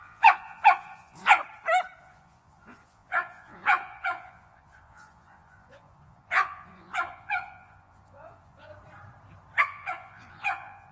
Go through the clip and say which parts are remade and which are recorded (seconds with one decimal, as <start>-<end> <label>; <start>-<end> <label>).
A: 0.0-1.4 remade; 1.4-2.0 recorded; 2.0-8.7 remade; 8.7-9.6 recorded; 9.6-10.9 remade